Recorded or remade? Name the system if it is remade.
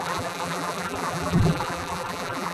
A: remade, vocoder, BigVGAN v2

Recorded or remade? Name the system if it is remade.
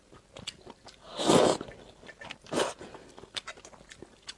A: recorded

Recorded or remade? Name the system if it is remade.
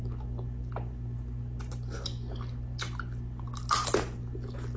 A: recorded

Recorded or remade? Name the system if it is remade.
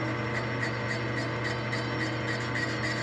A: recorded